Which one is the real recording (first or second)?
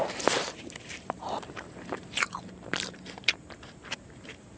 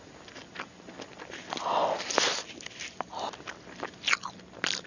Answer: second